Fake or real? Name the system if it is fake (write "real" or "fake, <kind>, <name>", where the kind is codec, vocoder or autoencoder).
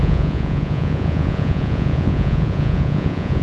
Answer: fake, vocoder, Vocos